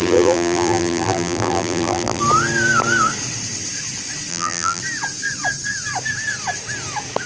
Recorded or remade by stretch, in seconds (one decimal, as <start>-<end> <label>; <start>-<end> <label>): 0.0-2.2 remade; 2.2-4.3 recorded; 4.3-4.8 remade; 4.8-7.3 recorded